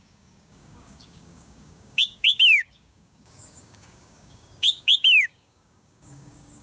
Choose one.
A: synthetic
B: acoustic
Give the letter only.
A